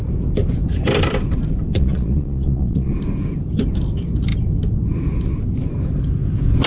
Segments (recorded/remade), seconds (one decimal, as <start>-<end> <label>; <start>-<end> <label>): 0.0-1.7 recorded; 1.7-2.9 remade; 2.9-6.7 recorded